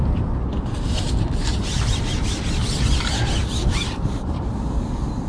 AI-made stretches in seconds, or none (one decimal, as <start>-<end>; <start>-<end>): 3.4-4.1